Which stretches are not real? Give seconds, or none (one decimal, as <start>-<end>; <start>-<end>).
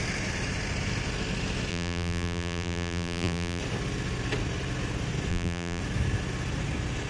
1.7-3.6; 5.3-5.8